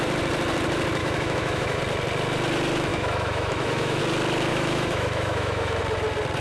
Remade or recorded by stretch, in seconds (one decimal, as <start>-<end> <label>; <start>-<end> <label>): 0.0-1.0 recorded; 1.0-1.8 remade; 1.8-2.9 recorded; 2.9-4.0 remade; 4.0-4.5 recorded; 4.5-5.8 remade; 5.8-6.4 recorded